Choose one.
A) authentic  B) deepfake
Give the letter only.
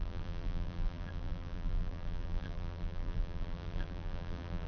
B